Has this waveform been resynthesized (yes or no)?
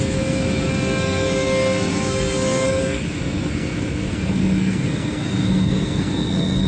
yes